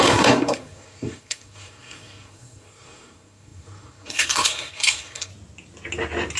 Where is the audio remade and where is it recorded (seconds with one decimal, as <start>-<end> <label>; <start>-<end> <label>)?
0.0-5.3 remade; 5.3-6.4 recorded